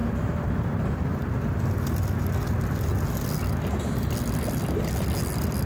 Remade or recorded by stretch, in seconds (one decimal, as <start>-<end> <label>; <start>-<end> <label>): 0.0-0.7 remade; 0.7-5.7 recorded